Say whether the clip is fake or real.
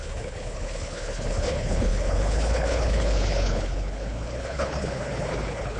fake